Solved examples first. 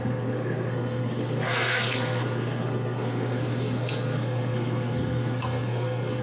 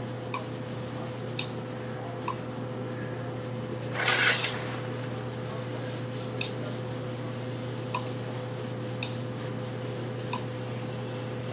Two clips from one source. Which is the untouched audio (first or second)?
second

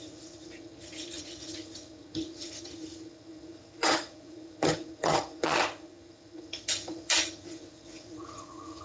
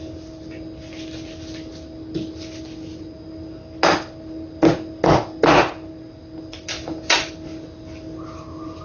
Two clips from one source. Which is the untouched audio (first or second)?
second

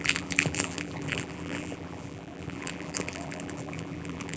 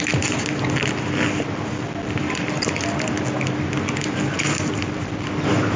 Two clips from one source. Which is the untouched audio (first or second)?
second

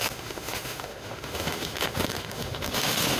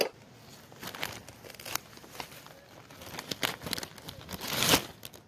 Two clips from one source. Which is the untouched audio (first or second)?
second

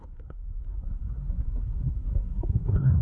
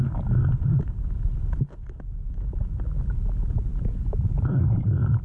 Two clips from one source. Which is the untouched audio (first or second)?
second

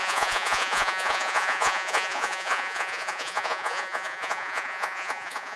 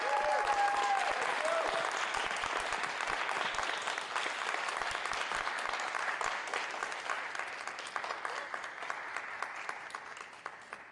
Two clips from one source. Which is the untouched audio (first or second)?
second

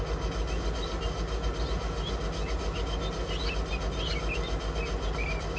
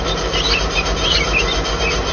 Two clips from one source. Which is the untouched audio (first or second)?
first